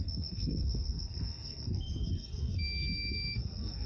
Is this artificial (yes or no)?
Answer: yes